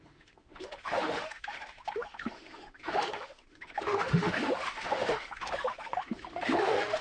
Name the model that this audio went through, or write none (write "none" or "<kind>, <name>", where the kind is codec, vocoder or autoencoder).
autoencoder, DAC-VAE